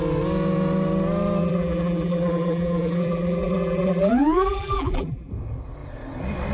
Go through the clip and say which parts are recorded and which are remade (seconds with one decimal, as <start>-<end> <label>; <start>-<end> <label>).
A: 0.0-1.4 recorded; 1.4-5.3 remade; 5.3-6.5 recorded